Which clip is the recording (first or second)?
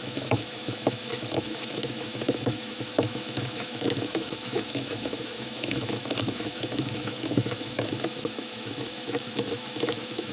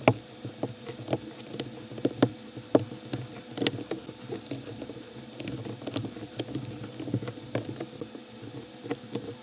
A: second